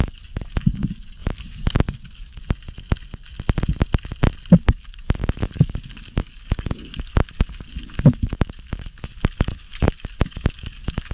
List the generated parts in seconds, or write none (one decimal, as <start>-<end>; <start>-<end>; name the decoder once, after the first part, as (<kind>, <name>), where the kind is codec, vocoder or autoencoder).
0.0-2.4 (codec, DAC); 4.6-11.1